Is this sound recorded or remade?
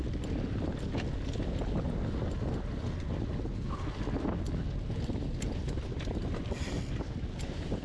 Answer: recorded